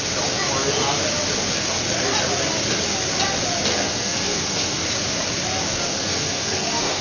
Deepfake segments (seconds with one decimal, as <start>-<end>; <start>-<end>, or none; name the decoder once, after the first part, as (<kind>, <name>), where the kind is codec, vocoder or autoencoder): 3.7-4.8 (codec, SNAC); 5.9-7.0